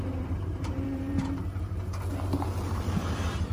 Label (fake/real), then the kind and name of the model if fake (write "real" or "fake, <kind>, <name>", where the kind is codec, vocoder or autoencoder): fake, vocoder, BigVGAN v2